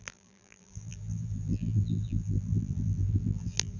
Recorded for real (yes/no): no